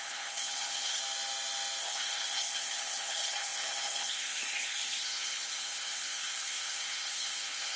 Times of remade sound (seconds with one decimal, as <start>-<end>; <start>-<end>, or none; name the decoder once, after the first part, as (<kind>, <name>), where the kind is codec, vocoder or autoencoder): 0.0-1.0 (codec, HILCodec); 1.8-7.8